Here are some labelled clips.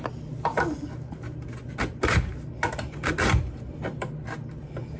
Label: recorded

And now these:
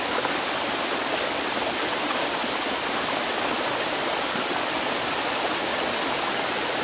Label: recorded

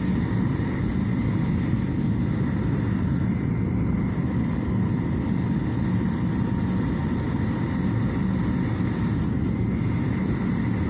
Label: recorded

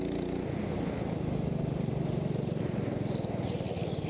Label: recorded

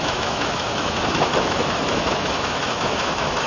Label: remade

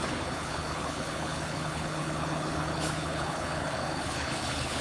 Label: remade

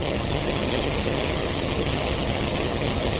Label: remade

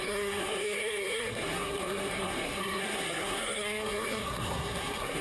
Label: remade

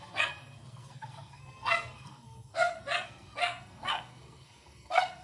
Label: remade